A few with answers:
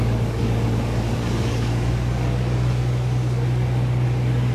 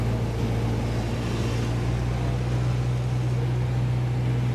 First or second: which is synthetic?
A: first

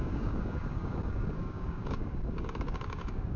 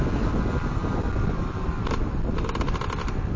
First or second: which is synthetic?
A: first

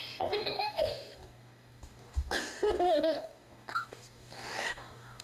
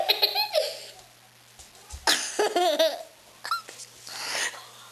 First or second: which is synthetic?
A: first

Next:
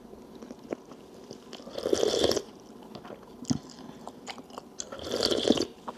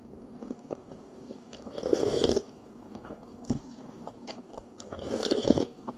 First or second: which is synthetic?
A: second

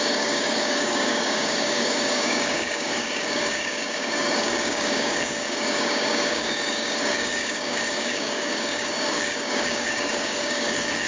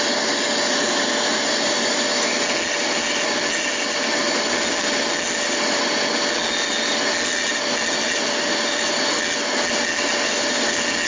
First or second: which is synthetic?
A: first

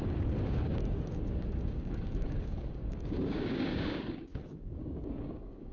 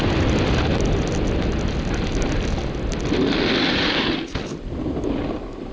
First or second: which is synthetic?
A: first